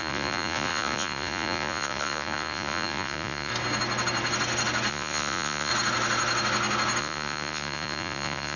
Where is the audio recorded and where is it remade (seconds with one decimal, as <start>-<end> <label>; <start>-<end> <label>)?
0.0-3.5 remade; 3.5-4.9 recorded; 4.9-5.7 remade; 5.7-7.0 recorded; 7.0-8.6 remade